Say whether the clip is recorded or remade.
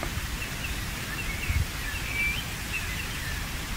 recorded